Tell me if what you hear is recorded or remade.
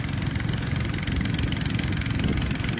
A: recorded